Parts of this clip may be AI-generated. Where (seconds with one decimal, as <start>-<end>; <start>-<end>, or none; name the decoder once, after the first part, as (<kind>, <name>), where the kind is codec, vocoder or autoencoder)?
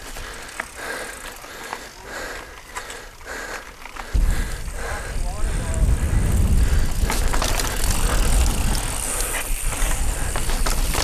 none